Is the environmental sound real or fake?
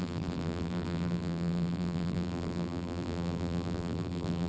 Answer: fake